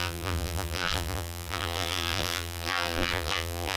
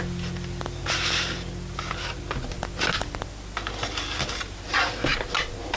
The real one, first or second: second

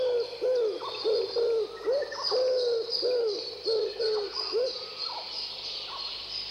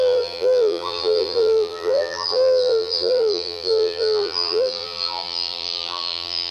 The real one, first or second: first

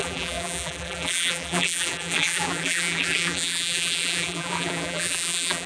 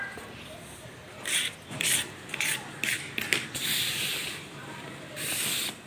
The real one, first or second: second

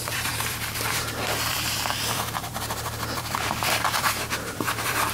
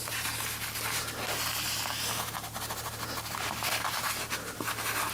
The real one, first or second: second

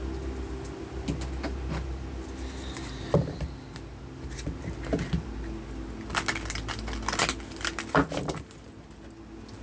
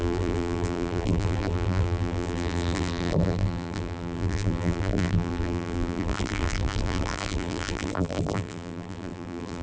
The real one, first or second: first